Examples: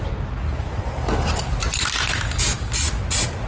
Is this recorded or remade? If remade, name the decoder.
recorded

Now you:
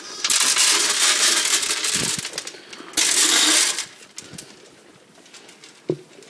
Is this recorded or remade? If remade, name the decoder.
recorded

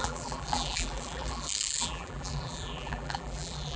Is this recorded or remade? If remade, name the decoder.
remade, vocoder, BigVGAN v2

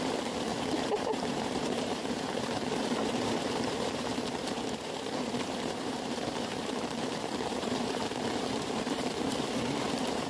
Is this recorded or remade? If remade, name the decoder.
remade, vocoder, BigVGAN v2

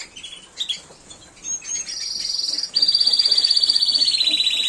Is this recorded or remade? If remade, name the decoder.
recorded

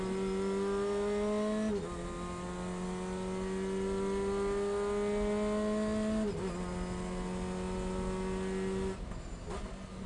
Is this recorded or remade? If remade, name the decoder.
recorded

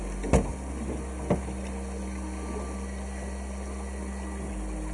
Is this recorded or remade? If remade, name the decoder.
recorded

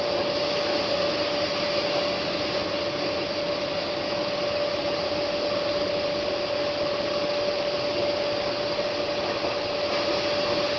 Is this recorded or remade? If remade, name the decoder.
recorded